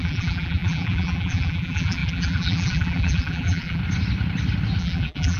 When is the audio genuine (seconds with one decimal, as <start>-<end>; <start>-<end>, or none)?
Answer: 3.8-4.8